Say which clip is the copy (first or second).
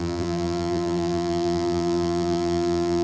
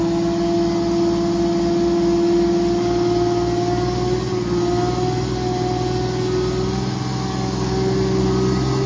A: first